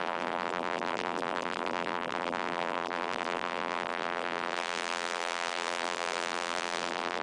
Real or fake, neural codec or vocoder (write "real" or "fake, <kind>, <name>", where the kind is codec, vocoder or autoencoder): fake, vocoder, BigVGAN v2